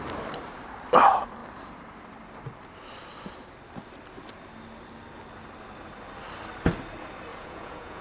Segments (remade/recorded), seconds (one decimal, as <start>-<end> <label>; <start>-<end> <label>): 0.0-7.3 recorded; 7.3-8.0 remade